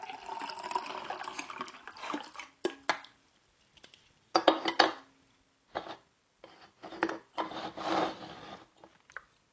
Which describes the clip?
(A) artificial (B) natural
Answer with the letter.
B